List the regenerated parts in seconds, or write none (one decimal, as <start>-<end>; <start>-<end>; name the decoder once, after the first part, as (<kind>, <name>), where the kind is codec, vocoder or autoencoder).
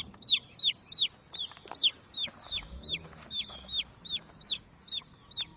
2.4-4.9 (autoencoder, DAC-VAE)